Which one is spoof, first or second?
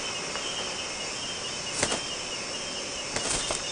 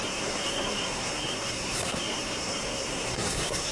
second